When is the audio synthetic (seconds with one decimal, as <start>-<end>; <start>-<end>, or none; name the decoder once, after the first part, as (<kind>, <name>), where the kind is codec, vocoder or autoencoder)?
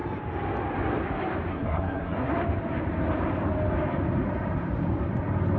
1.5-2.3 (codec, SNAC)